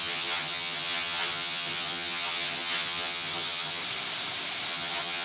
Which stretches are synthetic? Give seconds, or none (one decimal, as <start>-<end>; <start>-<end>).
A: 0.0-3.8; 4.7-5.2